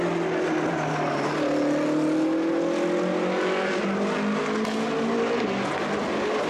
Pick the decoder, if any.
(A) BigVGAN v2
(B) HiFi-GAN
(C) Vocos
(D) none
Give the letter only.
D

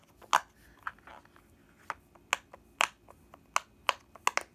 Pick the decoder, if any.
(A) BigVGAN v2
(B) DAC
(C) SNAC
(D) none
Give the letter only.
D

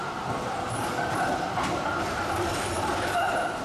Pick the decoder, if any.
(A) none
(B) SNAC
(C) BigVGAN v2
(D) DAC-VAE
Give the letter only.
C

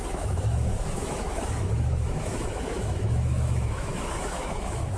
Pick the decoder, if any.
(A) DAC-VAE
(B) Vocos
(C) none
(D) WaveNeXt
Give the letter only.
A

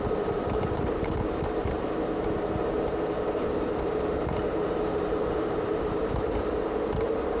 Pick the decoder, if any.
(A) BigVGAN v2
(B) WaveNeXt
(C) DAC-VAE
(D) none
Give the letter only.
A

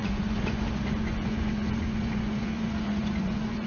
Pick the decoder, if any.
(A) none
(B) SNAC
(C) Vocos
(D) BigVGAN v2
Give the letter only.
C